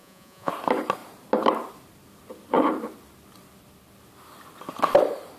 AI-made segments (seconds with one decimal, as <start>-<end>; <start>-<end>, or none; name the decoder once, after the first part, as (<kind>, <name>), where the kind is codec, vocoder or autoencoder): 0.0-0.5 (vocoder, Vocos)